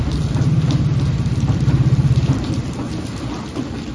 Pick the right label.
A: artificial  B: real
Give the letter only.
A